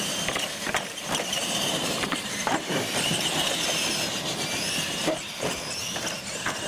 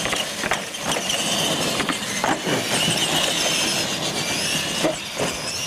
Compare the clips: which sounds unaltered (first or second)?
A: second